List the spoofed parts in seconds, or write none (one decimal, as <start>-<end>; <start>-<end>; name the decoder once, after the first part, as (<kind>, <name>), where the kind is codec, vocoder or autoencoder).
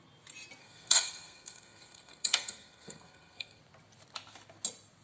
0.6-3.6 (codec, SNAC)